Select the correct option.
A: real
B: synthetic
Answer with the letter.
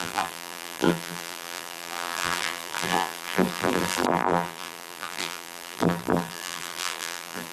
B